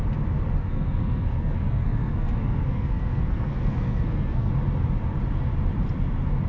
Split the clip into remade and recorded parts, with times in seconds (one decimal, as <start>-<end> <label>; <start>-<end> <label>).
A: 0.0-0.6 recorded; 0.6-4.5 remade; 4.5-6.5 recorded